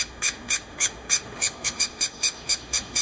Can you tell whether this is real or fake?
fake